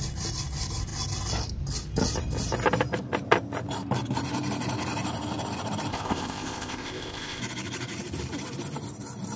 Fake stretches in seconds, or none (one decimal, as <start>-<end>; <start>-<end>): 5.9-7.4